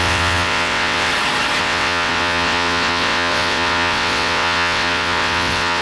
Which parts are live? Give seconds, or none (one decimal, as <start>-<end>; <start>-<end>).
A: 1.1-1.6